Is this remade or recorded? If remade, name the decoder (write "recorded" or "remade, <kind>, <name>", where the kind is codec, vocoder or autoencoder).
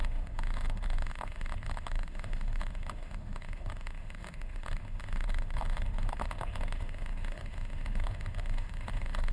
remade, autoencoder, DAC-VAE